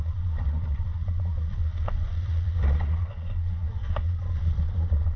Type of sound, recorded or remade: remade